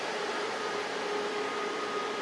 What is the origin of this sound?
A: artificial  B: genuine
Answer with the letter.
B